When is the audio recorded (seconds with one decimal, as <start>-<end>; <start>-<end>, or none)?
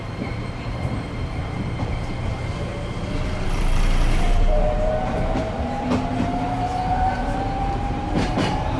2.7-3.4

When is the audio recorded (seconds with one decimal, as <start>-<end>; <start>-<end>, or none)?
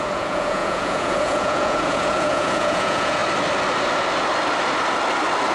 3.2-5.5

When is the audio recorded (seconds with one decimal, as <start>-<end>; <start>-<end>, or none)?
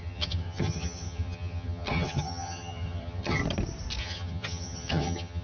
3.4-4.0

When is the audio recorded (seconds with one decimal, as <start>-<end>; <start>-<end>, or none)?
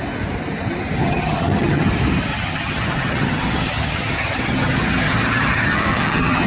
0.0-1.0; 1.9-2.3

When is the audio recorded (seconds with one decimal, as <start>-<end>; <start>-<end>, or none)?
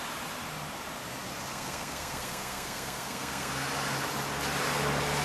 0.0-1.5; 3.5-5.2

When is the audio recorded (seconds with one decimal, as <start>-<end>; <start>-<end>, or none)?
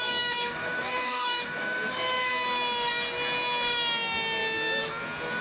2.3-5.4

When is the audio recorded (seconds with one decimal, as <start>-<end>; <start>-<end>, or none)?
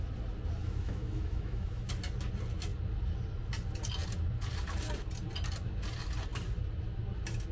0.0-0.6; 1.9-7.5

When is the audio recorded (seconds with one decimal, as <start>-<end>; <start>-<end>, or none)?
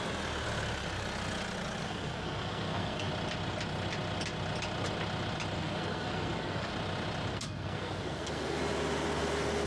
0.0-1.8; 3.1-5.6; 6.7-7.3; 8.6-9.7